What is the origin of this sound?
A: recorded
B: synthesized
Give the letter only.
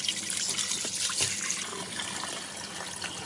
A